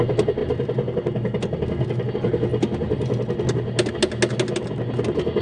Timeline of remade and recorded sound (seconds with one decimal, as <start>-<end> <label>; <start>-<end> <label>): 0.0-5.4 recorded